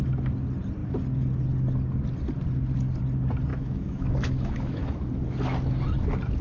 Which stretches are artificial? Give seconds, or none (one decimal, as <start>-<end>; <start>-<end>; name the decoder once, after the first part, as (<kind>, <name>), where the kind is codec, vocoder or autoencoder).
3.5-5.1 (autoencoder, DAC-VAE)

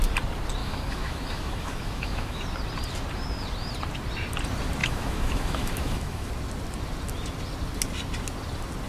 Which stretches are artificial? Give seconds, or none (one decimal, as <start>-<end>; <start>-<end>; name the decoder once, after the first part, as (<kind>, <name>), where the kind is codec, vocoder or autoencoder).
0.6-2.4 (autoencoder, DAC-VAE); 4.8-6.3

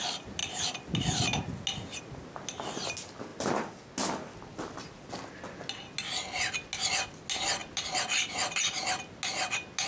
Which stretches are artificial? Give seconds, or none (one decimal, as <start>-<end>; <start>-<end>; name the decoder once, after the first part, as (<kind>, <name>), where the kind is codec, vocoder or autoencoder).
none

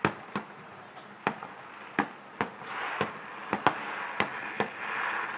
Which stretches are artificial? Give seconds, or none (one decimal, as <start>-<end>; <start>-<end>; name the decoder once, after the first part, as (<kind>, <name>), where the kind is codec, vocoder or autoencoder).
none

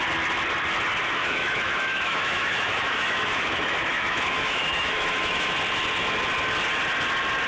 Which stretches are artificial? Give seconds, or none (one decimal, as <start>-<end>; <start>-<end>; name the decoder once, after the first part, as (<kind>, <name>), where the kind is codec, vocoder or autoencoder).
1.2-5.5 (autoencoder, DAC-VAE)

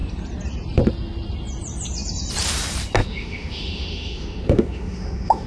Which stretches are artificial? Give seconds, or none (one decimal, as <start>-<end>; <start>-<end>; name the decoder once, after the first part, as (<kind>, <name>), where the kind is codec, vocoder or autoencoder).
3.0-5.5 (autoencoder, DAC-VAE)

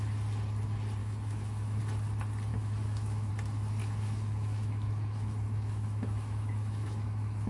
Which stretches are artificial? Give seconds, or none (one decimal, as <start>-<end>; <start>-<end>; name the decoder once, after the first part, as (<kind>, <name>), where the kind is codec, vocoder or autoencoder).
1.0-1.8 (autoencoder, DAC-VAE); 2.5-3.3; 3.8-7.5

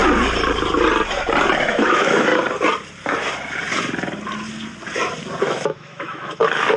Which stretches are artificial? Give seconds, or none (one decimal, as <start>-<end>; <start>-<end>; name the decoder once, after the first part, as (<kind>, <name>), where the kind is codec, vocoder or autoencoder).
1.6-2.3 (autoencoder, DAC-VAE); 5.4-6.8